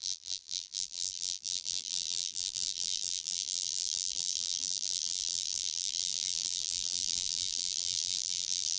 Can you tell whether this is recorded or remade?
remade